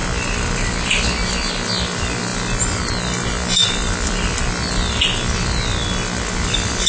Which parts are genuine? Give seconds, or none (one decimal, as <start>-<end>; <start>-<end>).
0.0-6.9